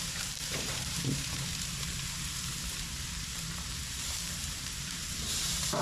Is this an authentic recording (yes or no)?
no